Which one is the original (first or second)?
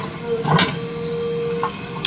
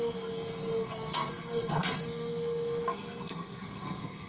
first